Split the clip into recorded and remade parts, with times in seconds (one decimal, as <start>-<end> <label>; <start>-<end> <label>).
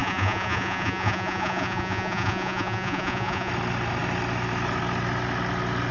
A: 0.0-3.5 remade; 3.5-5.9 recorded